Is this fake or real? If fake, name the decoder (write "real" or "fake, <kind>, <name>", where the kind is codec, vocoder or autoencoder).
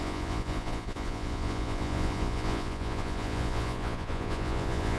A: fake, vocoder, Vocos